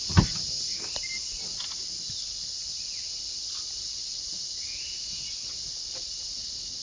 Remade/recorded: recorded